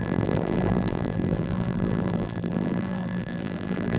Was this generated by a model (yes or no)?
yes